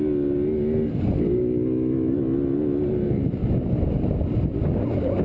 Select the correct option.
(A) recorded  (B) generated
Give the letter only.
A